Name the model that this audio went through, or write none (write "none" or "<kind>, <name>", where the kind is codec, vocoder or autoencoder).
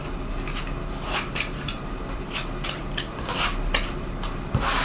none